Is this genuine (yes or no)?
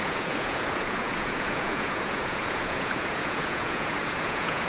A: no